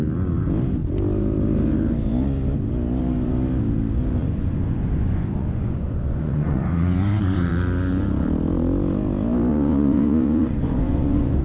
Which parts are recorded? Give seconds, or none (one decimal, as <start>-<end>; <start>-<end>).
0.0-4.2; 7.5-9.5